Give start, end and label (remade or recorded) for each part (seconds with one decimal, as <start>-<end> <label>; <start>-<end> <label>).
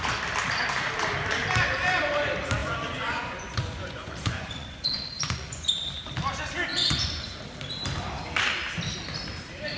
0.0-2.6 recorded; 2.6-5.7 remade; 5.7-6.7 recorded; 6.7-7.2 remade; 7.2-9.8 recorded